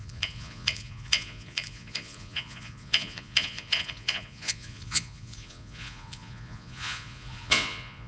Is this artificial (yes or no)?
yes